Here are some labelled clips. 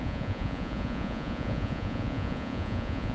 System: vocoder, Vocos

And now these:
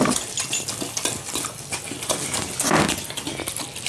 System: none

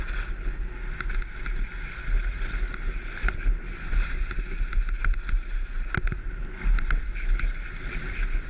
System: none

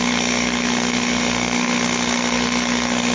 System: codec, SNAC